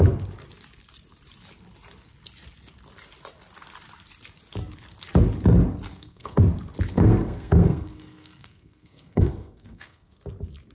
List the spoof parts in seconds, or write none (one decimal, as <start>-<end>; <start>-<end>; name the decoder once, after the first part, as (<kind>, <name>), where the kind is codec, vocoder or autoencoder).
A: 5.9-6.4 (codec, SNAC); 6.9-10.2